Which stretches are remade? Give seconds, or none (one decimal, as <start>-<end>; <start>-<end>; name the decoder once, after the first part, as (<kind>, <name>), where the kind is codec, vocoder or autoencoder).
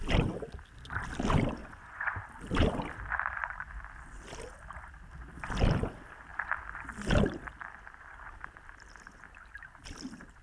1.6-2.2 (vocoder, Vocos)